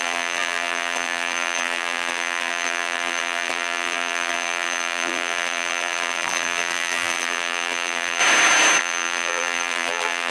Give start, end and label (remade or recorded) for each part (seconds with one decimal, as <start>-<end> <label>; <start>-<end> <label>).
0.0-8.2 remade; 8.2-8.8 recorded; 8.8-10.3 remade